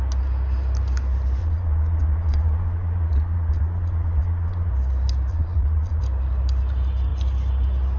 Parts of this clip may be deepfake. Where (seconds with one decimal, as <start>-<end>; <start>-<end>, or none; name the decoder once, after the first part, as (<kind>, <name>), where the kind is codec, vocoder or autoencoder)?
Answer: 1.4-4.7 (vocoder, Vocos); 5.3-6.0